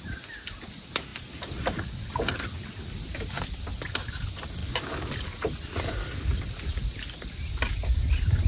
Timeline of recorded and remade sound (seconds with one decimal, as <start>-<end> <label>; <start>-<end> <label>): 0.0-8.5 recorded